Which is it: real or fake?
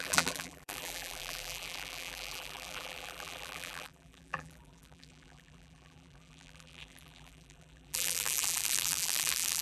fake